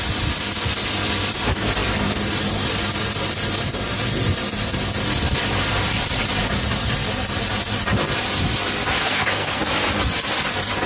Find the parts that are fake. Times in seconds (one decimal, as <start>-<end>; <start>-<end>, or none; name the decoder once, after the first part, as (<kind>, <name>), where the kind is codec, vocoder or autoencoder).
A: 9.0-9.6 (codec, SNAC)